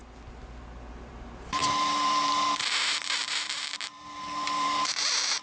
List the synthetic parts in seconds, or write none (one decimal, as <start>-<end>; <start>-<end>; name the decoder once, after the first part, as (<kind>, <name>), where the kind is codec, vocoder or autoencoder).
0.9-5.4 (vocoder, BigVGAN v2)